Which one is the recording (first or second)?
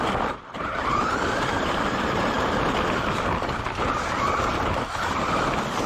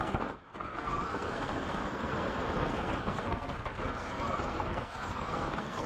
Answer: first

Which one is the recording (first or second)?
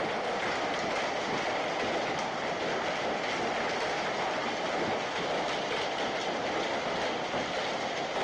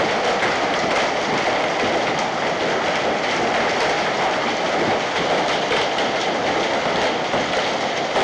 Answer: second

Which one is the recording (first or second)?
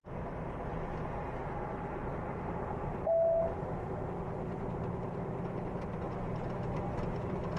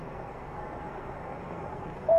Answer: first